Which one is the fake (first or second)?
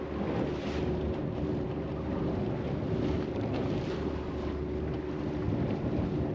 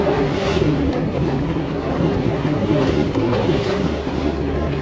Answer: second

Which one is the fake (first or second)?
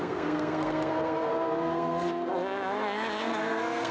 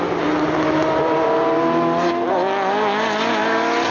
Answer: first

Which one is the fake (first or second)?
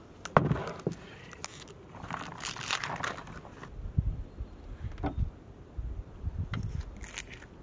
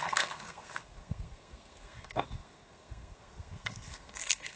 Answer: second